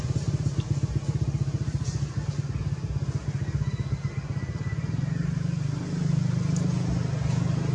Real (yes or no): yes